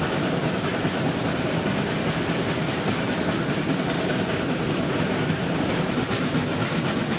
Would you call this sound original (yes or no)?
yes